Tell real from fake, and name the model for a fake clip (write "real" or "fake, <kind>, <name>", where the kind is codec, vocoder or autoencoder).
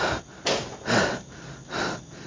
real